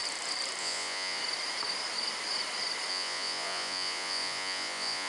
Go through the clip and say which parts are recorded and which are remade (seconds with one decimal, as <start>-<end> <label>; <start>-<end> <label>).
0.0-0.6 recorded; 0.6-1.2 remade; 1.2-2.9 recorded; 2.9-5.1 remade